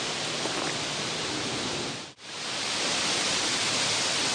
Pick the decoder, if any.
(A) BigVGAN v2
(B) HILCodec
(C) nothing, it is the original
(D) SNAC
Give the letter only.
C